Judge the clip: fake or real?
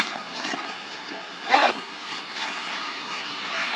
fake